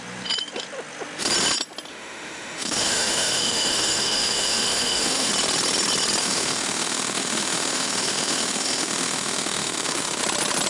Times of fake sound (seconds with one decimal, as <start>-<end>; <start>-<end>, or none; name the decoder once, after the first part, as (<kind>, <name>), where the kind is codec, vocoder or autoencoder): 1.9-5.3 (autoencoder, DAC-VAE); 6.2-10.2